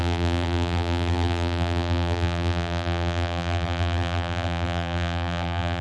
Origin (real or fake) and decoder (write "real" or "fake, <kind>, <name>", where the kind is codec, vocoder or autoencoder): fake, vocoder, BigVGAN v2